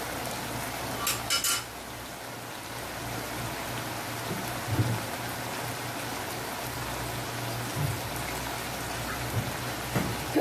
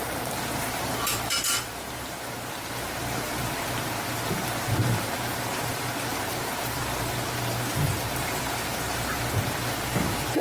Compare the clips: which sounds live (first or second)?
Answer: first